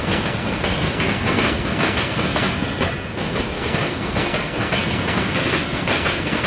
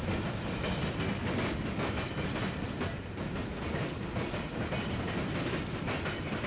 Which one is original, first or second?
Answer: second